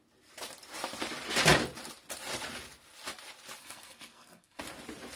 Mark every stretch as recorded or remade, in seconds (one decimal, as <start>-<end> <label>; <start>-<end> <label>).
0.0-3.6 recorded; 3.6-4.6 remade; 4.6-5.2 recorded